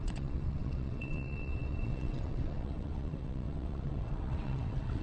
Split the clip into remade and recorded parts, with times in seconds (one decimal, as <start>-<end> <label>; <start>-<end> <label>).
0.0-5.0 remade